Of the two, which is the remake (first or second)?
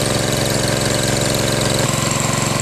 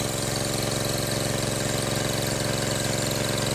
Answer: first